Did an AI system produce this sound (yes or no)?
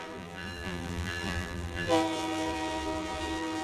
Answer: yes